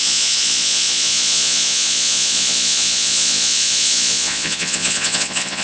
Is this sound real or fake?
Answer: fake